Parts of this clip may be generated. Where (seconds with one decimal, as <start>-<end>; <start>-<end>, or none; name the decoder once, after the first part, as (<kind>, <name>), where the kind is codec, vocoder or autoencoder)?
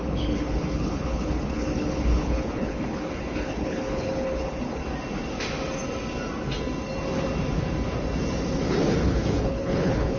0.0-4.8 (codec, HILCodec); 8.9-10.2